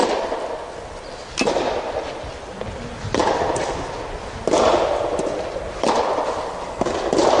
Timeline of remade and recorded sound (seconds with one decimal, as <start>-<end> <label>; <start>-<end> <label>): 0.0-7.4 recorded